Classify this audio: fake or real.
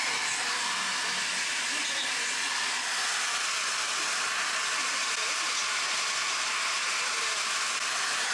real